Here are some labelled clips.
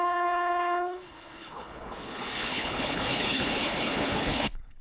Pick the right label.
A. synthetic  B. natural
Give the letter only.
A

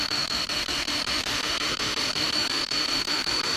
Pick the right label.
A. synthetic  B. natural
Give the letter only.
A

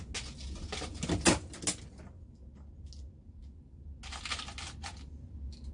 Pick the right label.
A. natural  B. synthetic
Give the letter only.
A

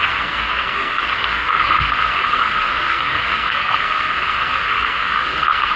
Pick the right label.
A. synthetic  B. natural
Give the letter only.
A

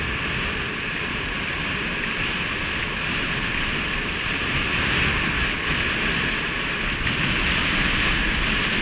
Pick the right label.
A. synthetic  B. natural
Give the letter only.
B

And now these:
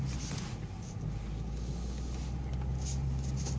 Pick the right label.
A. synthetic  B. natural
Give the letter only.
B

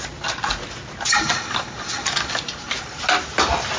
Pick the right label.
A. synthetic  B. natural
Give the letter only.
B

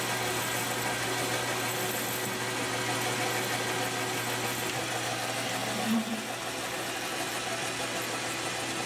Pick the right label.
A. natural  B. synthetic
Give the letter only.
A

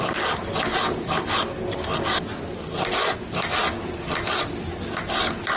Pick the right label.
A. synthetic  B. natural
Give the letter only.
B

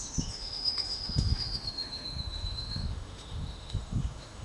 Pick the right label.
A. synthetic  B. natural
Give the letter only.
A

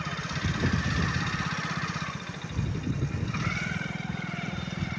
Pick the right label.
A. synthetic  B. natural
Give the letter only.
B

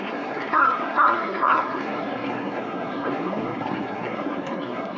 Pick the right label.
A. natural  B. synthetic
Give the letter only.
B